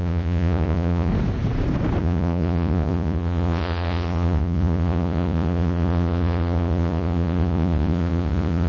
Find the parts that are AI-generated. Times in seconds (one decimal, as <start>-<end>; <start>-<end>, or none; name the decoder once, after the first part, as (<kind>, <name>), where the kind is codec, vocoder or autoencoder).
0.0-1.1 (vocoder, Vocos); 2.0-8.7